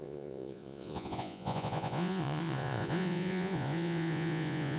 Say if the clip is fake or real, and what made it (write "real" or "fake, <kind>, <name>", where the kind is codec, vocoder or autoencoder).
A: fake, vocoder, Vocos